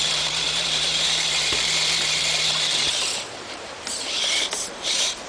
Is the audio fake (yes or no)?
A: yes